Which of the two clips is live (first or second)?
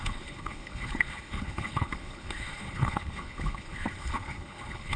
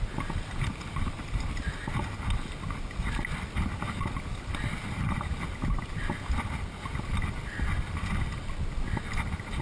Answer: second